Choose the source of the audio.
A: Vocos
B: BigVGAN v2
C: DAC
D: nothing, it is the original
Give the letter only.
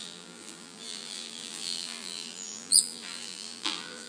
B